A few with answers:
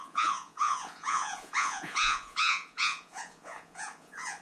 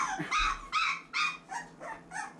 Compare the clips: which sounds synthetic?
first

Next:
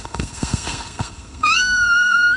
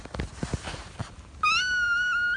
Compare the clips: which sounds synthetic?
first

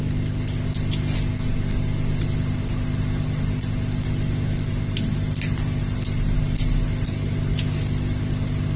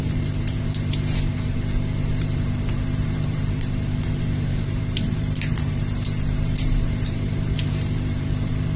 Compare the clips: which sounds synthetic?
second